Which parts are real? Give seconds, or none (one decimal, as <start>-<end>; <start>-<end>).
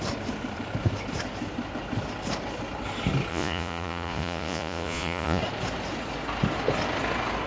0.0-3.3; 5.4-7.5